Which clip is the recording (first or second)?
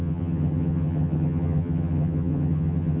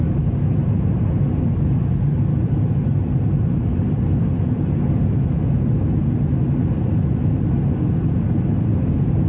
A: second